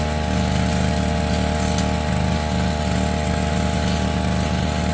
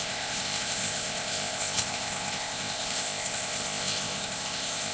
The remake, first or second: second